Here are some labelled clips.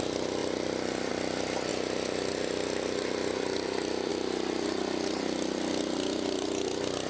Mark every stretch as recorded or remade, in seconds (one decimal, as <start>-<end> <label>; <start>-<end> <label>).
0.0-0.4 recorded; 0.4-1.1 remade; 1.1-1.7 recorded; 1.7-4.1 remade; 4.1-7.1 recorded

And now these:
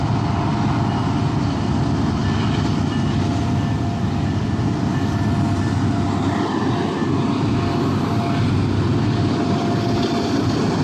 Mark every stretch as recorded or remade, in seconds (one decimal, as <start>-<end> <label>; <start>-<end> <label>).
0.0-10.8 recorded

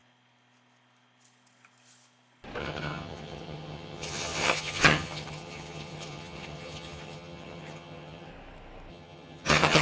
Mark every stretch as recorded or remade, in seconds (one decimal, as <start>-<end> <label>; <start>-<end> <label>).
0.0-2.6 recorded; 2.6-8.3 remade; 8.3-8.9 recorded; 8.9-9.8 remade

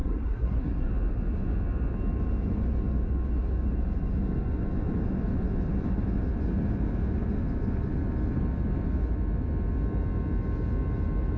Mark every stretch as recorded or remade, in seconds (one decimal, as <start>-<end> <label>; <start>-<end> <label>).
0.0-0.9 remade; 0.9-11.4 recorded